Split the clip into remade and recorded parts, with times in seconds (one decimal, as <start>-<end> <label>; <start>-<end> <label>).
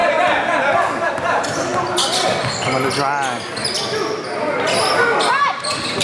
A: 0.0-1.1 recorded; 1.1-1.7 remade; 1.7-5.3 recorded; 5.3-6.0 remade